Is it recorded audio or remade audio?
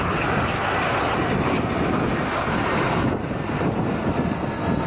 recorded